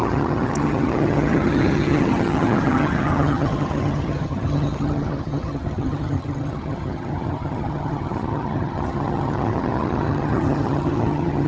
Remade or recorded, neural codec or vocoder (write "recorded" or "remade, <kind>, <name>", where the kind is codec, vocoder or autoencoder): remade, vocoder, HiFi-GAN